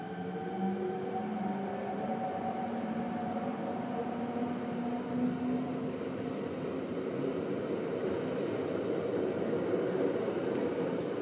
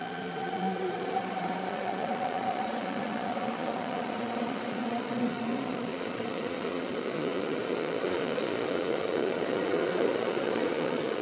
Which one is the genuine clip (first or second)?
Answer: first